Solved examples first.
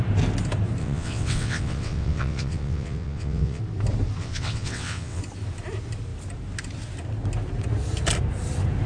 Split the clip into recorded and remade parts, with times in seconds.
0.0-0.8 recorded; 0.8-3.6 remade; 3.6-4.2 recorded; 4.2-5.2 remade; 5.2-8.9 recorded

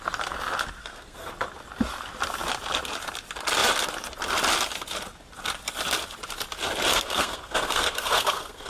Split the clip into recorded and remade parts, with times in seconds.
0.0-0.8 recorded; 0.8-1.3 remade; 1.3-6.9 recorded; 6.9-8.7 remade

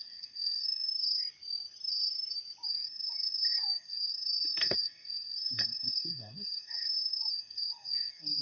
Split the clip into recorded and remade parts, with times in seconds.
0.0-0.9 remade; 0.9-2.7 recorded; 2.7-8.4 remade

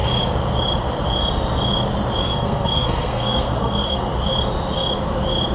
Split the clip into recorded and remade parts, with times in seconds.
0.0-2.2 recorded; 2.2-4.1 remade; 4.1-5.5 recorded

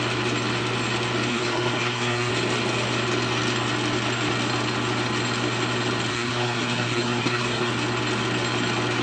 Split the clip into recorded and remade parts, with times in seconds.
0.0-1.3 recorded; 1.3-2.3 remade; 2.3-6.1 recorded; 6.1-7.7 remade; 7.7-9.0 recorded

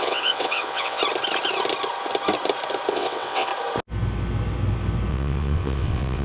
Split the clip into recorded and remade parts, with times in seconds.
0.0-1.0 remade; 1.0-2.9 recorded; 2.9-3.5 remade; 3.5-5.1 recorded; 5.1-6.2 remade